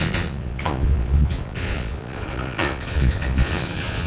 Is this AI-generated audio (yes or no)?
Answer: yes